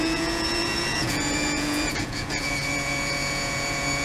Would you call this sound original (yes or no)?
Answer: no